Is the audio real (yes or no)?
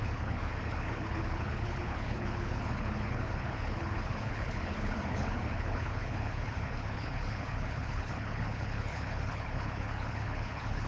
no